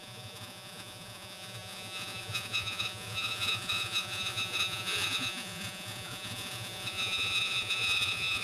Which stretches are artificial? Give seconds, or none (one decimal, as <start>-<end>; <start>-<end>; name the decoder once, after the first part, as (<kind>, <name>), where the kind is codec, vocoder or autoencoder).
0.0-8.4 (vocoder, Vocos)